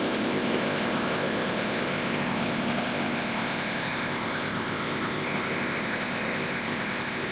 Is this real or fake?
fake